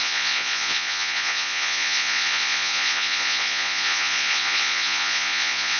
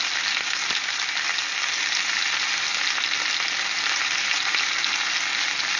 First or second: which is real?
second